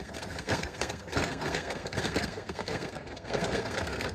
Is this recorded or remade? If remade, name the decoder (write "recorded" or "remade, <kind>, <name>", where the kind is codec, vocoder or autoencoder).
remade, codec, SNAC